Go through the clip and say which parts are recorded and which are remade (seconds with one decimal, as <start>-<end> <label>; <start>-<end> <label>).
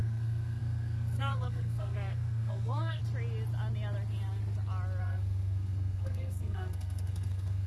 0.0-3.0 remade; 3.0-5.0 recorded; 5.0-7.7 remade